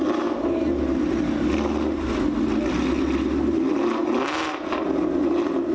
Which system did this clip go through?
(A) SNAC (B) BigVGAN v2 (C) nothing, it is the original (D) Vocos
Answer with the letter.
C